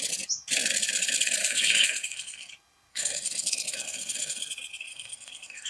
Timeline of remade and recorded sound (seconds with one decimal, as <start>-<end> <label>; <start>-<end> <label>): 0.0-1.4 recorded; 1.4-2.5 remade; 2.5-2.9 recorded; 2.9-4.4 remade; 4.4-4.9 recorded; 4.9-5.7 remade